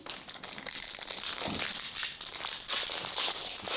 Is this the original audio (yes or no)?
yes